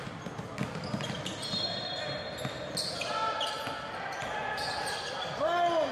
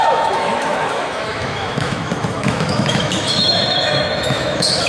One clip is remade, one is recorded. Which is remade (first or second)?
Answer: second